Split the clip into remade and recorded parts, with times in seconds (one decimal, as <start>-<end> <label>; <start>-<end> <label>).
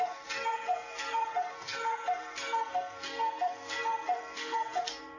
0.0-5.2 remade